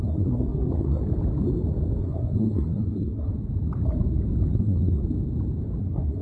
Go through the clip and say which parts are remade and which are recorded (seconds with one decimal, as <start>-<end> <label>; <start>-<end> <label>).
0.0-1.0 remade; 1.0-2.0 recorded; 2.0-3.3 remade; 3.3-4.5 recorded; 4.5-5.0 remade; 5.0-5.8 recorded; 5.8-6.2 remade